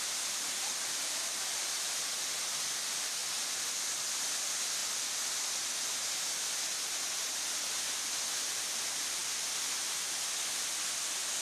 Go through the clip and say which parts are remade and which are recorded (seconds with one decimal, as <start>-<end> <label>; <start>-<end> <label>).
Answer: 0.0-3.2 remade; 3.2-4.1 recorded; 4.1-4.8 remade; 4.8-7.2 recorded; 7.2-9.2 remade; 9.2-11.0 recorded; 11.0-11.4 remade